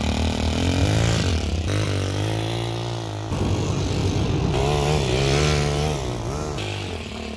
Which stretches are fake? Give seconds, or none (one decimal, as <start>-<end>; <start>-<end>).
none

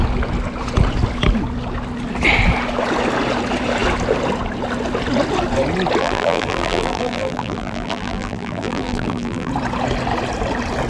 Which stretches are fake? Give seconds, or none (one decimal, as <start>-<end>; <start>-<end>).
6.0-9.5